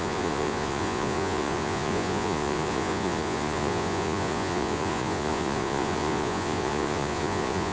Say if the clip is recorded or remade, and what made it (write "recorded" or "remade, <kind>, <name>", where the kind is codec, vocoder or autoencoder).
remade, vocoder, Vocos